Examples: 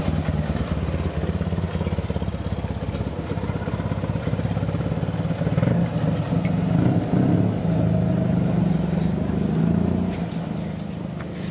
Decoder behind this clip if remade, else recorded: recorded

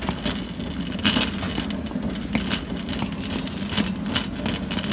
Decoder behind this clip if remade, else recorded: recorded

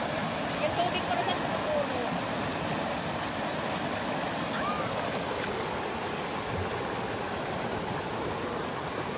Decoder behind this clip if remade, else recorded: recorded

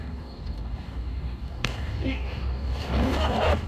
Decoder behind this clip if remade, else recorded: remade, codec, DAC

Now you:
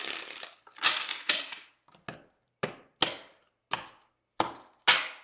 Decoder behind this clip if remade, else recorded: recorded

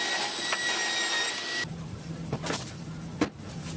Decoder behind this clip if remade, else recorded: recorded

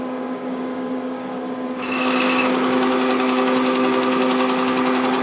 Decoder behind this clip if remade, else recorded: remade, codec, DAC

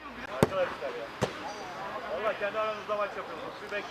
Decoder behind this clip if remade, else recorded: recorded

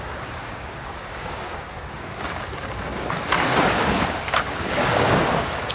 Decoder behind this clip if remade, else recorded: remade, codec, DAC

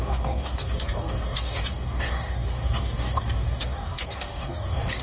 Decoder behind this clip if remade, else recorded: remade, codec, DAC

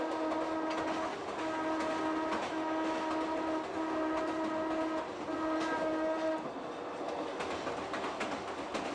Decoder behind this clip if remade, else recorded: recorded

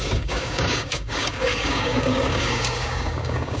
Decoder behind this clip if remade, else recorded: remade, codec, DAC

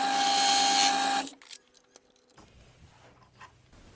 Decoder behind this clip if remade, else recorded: recorded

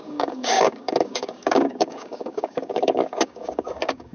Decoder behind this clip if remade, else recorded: remade, codec, DAC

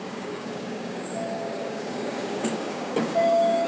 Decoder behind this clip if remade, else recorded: remade, codec, DAC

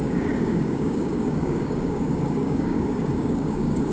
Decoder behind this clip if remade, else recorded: remade, codec, DAC